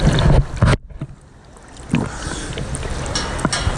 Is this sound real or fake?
real